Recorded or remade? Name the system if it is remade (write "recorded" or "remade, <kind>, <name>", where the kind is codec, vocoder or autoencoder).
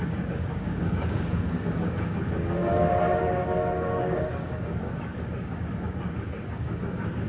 remade, codec, DAC